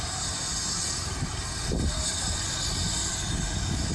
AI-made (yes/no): no